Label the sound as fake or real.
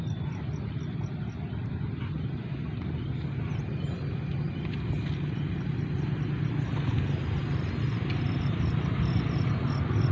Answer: real